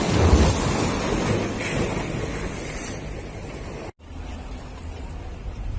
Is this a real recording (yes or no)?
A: yes